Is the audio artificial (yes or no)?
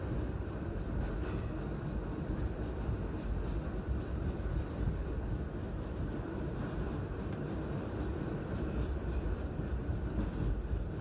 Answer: yes